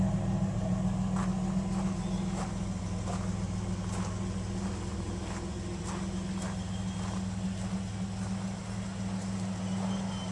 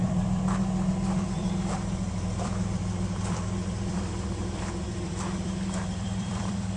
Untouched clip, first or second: first